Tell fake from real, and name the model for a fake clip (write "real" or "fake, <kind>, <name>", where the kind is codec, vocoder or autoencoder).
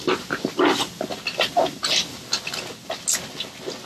real